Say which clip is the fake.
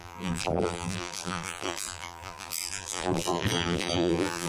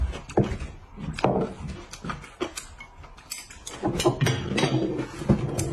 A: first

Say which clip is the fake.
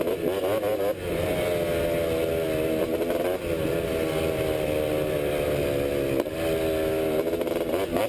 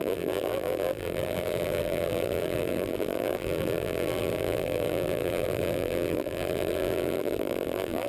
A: second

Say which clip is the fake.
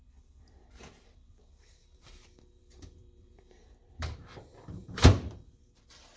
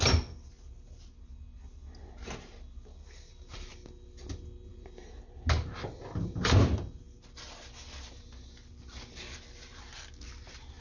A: first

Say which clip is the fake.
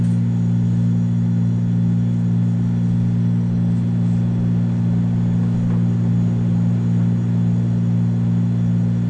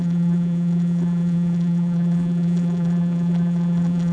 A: second